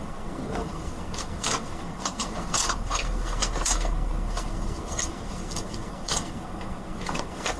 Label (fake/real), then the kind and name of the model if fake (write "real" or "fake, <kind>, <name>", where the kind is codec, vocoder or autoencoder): fake, codec, SNAC